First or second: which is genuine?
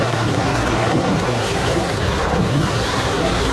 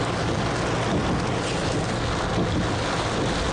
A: second